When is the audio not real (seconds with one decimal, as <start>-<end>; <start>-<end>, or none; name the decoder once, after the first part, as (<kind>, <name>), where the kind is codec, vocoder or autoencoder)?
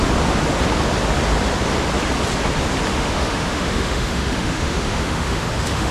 2.9-5.9 (autoencoder, DAC-VAE)